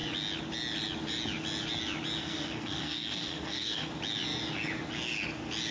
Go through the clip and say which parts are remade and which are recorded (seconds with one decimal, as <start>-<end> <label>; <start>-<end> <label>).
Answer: 0.0-2.2 recorded; 2.2-3.9 remade; 3.9-5.7 recorded